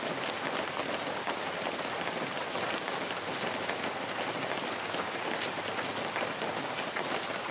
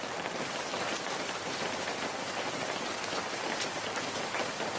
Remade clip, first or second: second